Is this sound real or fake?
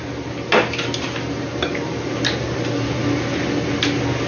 real